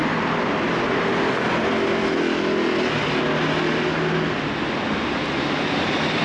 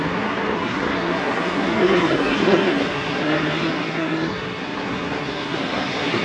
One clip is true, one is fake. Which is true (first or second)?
first